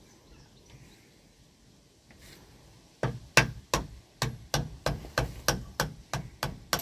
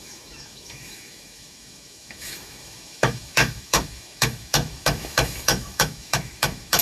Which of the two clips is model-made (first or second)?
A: second